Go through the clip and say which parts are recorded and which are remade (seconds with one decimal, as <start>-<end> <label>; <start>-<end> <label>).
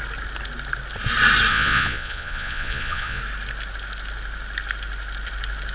0.0-1.5 recorded; 1.5-3.2 remade; 3.2-5.7 recorded